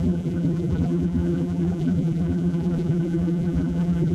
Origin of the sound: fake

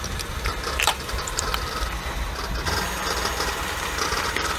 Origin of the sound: fake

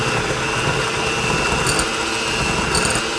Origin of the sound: real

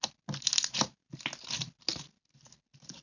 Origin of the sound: real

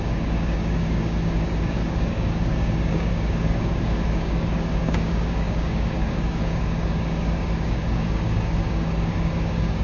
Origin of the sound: fake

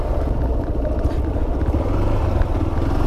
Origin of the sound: real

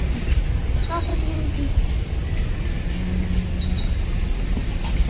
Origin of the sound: real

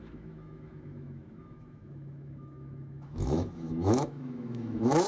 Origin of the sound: fake